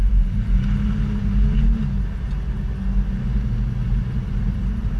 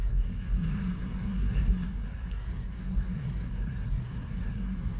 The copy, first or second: second